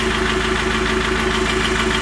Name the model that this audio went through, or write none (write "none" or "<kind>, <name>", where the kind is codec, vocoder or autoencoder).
none